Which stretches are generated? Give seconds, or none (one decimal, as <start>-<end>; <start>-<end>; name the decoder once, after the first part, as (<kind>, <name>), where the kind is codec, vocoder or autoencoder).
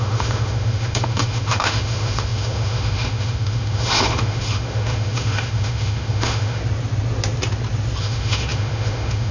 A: 0.0-6.6 (autoencoder, DAC-VAE); 8.0-9.3